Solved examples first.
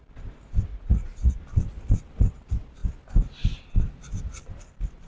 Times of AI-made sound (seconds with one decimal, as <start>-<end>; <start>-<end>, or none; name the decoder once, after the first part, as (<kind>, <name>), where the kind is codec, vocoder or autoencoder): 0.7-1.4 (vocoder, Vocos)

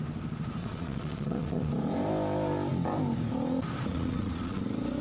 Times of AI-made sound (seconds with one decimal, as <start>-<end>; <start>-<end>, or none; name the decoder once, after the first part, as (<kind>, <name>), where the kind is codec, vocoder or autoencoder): 0.6-1.7 (vocoder, Vocos); 3.9-4.6

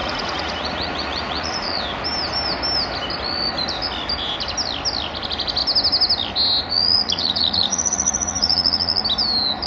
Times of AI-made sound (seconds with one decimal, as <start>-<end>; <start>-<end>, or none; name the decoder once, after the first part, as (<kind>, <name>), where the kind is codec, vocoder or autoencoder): 0.0-1.8 (vocoder, Vocos); 6.7-9.0

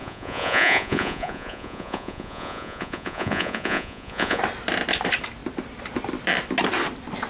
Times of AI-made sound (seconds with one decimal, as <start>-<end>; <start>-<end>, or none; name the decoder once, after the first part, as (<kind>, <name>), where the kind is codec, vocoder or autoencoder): 0.0-4.4 (vocoder, Vocos)

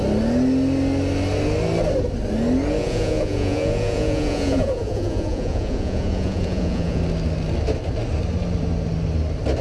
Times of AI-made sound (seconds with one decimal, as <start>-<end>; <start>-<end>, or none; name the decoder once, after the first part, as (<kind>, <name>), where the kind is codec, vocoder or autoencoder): 2.8-7.0 (vocoder, Vocos)

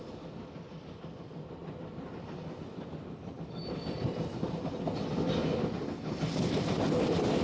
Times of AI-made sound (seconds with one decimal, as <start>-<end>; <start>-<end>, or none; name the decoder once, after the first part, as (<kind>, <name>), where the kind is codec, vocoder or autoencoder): none

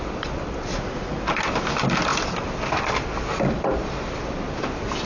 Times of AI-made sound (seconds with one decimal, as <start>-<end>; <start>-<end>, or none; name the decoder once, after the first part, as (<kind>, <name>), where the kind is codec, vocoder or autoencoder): 0.7-1.3 (vocoder, Vocos)